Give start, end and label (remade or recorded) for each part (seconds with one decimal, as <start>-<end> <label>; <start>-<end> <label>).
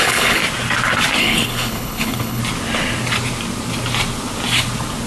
0.0-0.4 remade; 0.4-1.2 recorded; 1.2-2.4 remade; 2.4-5.1 recorded